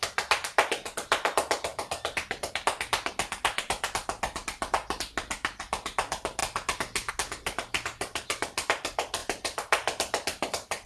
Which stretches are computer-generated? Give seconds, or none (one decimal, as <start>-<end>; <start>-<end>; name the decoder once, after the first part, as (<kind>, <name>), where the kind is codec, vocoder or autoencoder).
1.7-2.5 (vocoder, BigVGAN v2); 9.2-10.9